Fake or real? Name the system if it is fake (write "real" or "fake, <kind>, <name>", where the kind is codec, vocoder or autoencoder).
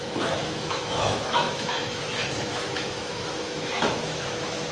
fake, autoencoder, DAC-VAE